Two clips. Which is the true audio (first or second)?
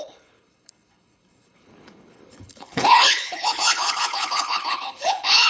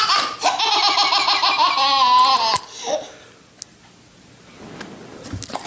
second